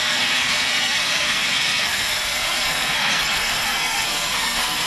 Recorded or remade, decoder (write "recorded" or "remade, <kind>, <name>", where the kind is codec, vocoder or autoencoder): remade, codec, SNAC